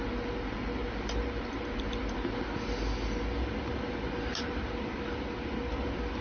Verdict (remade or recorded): recorded